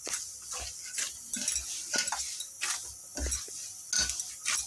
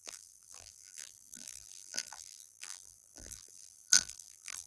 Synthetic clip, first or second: second